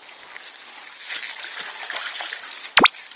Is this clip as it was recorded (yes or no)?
yes